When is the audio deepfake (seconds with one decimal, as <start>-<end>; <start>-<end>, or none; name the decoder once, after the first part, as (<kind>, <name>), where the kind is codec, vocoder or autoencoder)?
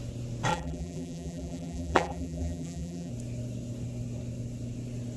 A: 0.5-3.1 (vocoder, BigVGAN v2)